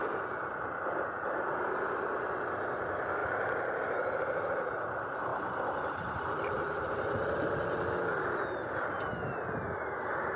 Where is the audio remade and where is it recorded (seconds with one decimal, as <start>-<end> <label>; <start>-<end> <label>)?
0.0-3.2 recorded; 3.2-3.8 remade; 3.8-5.3 recorded; 5.3-7.3 remade; 7.3-10.4 recorded